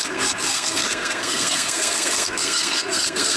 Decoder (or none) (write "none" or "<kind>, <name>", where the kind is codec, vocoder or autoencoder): codec, SNAC